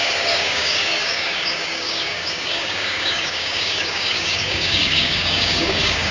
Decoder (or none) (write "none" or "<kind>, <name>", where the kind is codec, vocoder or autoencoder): codec, DAC